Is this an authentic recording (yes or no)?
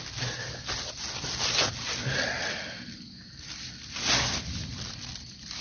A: yes